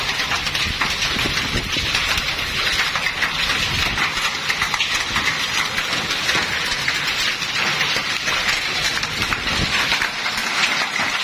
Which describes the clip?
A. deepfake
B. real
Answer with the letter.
B